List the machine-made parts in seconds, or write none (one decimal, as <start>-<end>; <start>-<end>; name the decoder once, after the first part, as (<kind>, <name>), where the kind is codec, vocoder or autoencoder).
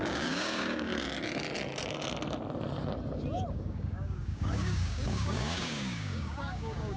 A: 0.0-0.9 (codec, DAC); 3.5-7.0